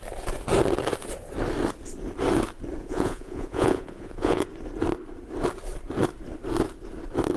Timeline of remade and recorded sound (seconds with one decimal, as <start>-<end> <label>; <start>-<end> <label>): 0.0-2.8 recorded; 2.8-4.4 remade; 4.4-7.4 recorded